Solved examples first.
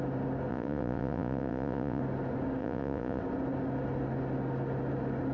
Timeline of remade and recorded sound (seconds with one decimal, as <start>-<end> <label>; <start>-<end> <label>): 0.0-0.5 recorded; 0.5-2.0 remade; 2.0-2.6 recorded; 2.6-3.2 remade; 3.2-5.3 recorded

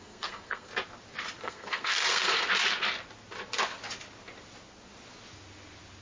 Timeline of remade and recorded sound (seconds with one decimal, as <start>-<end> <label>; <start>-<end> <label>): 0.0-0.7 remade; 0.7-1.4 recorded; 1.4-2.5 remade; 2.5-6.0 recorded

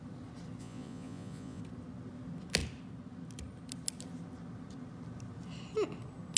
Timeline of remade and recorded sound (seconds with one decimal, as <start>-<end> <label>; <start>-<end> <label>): 0.0-0.6 recorded; 0.6-1.6 remade; 1.6-6.4 recorded